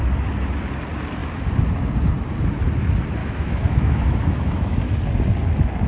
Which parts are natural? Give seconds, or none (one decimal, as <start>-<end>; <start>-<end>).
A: 0.0-3.2; 4.9-5.9